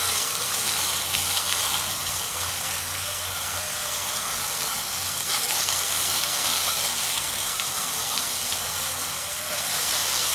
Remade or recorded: remade